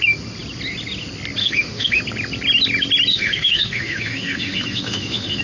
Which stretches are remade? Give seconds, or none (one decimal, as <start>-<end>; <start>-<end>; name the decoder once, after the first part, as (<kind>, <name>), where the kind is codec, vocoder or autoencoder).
1.4-2.0 (autoencoder, DAC-VAE); 3.1-5.4